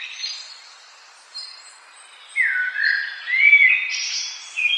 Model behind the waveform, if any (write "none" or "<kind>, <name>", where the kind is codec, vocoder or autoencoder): none